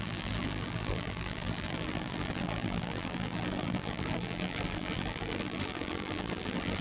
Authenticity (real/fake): fake